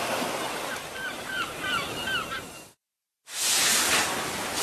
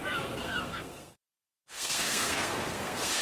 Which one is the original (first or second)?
first